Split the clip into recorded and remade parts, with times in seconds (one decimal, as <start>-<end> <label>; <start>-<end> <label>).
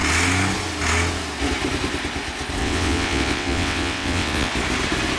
0.0-2.6 recorded; 2.6-4.5 remade; 4.5-5.2 recorded